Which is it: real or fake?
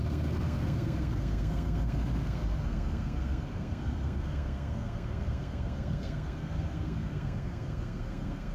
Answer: fake